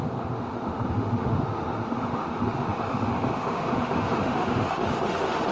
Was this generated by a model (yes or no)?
yes